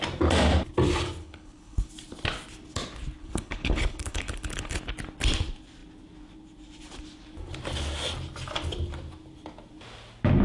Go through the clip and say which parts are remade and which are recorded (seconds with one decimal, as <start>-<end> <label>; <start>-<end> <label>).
0.0-1.2 recorded; 1.2-1.9 remade; 1.9-3.2 recorded; 3.2-4.8 remade; 4.8-10.4 recorded

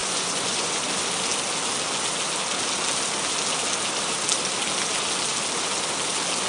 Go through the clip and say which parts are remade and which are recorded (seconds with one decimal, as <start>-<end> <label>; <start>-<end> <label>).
0.0-0.8 remade; 0.8-6.5 recorded

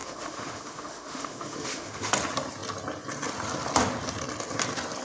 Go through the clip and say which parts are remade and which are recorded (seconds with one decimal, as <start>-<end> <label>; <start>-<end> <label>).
0.0-2.1 remade; 2.1-5.0 recorded

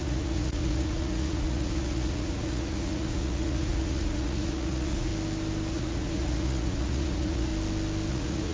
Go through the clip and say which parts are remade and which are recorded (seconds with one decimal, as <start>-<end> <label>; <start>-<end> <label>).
0.0-5.1 remade; 5.1-5.7 recorded; 5.7-7.5 remade; 7.5-8.1 recorded; 8.1-8.5 remade

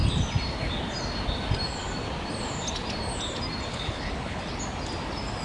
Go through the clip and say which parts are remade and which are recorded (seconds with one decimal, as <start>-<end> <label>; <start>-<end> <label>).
0.0-3.7 recorded; 3.7-4.4 remade; 4.4-5.4 recorded

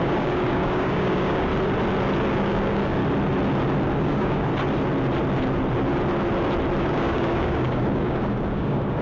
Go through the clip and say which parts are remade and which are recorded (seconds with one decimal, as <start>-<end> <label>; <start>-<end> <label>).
0.0-1.5 remade; 1.5-2.3 recorded; 2.3-3.0 remade; 3.0-4.0 recorded; 4.0-4.5 remade; 4.5-6.8 recorded; 6.8-9.0 remade

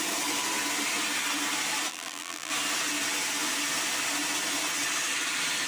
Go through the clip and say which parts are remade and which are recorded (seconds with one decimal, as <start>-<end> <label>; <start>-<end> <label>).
0.0-1.9 recorded; 1.9-2.5 remade; 2.5-5.7 recorded